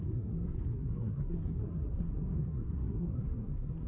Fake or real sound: fake